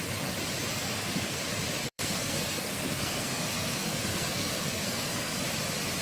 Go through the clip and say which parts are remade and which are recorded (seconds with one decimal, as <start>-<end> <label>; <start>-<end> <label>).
0.0-0.7 recorded; 0.7-1.4 remade; 1.4-1.8 recorded; 1.8-5.4 remade; 5.4-6.0 recorded

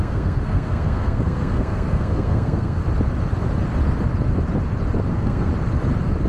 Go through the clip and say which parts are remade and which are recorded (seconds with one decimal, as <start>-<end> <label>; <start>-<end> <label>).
0.0-2.8 remade; 2.8-5.1 recorded; 5.1-5.5 remade; 5.5-6.3 recorded

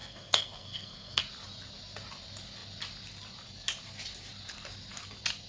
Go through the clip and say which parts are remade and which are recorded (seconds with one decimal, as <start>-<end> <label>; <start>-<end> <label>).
0.0-1.2 remade; 1.2-5.5 recorded

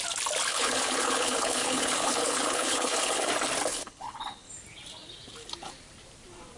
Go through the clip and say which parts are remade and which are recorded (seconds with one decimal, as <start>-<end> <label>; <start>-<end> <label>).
0.0-0.5 recorded; 0.5-3.3 remade; 3.3-3.7 recorded; 3.7-4.5 remade; 4.5-6.6 recorded

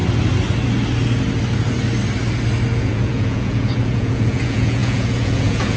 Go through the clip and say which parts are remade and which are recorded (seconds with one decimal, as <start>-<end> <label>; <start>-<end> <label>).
0.0-2.8 recorded; 2.8-5.8 remade